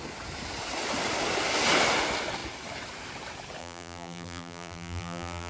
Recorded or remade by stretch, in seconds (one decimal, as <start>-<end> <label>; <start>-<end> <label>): 0.0-3.6 recorded; 3.6-5.5 remade

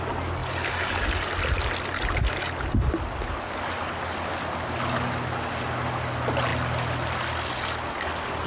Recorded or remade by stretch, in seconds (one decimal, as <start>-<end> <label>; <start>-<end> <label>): 0.0-8.5 recorded

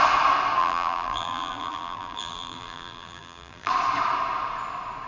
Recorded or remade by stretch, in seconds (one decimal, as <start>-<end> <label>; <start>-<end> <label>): 0.0-0.6 recorded; 0.6-3.7 remade; 3.7-5.1 recorded

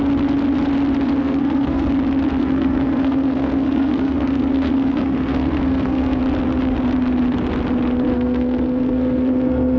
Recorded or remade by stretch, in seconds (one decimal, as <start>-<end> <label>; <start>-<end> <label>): 0.0-1.2 recorded; 1.2-1.9 remade; 1.9-2.4 recorded; 2.4-6.2 remade; 6.2-8.1 recorded; 8.1-9.8 remade

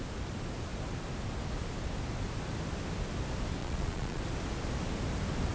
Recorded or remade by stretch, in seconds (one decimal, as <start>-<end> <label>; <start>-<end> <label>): 0.0-3.6 recorded; 3.6-4.2 remade; 4.2-5.5 recorded

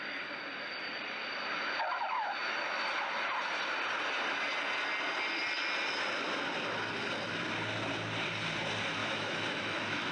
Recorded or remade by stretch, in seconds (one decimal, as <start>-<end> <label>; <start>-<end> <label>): 0.0-9.0 recorded; 9.0-10.1 remade